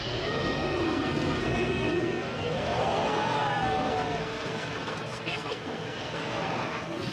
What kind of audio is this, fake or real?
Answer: fake